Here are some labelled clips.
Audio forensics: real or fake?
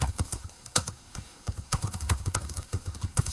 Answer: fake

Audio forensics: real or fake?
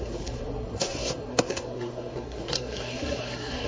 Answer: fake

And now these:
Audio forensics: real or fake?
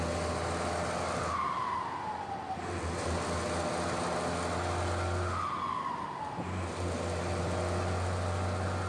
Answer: real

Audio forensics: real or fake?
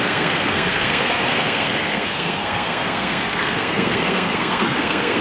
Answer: fake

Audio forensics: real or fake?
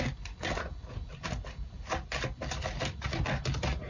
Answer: real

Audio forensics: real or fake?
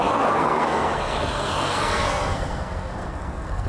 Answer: fake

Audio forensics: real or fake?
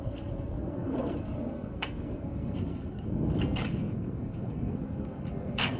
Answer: fake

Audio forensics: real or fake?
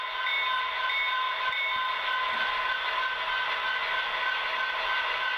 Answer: real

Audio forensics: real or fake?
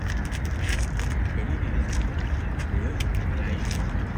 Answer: real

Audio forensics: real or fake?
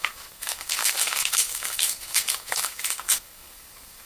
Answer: fake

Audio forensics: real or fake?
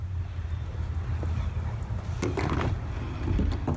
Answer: real